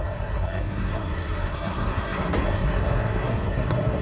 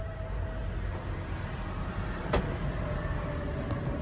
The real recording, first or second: second